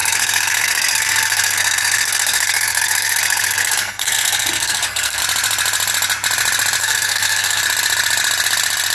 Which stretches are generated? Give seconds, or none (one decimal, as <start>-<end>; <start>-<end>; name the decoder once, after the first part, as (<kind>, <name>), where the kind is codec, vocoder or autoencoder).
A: 0.0-5.2 (codec, SNAC); 6.8-7.6